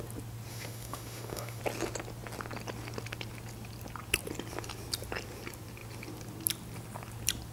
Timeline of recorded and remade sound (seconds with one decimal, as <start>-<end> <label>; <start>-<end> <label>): 0.0-0.5 recorded; 0.5-1.6 remade; 1.6-7.5 recorded